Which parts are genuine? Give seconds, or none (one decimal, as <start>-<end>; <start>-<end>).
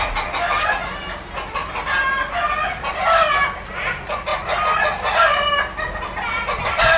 0.0-7.0